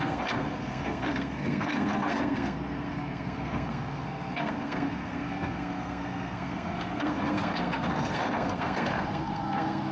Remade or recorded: remade